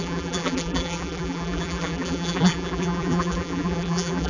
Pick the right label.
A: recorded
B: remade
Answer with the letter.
B